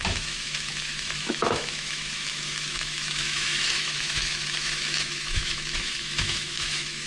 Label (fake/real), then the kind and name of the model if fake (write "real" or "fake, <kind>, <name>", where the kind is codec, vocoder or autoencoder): fake, autoencoder, DAC-VAE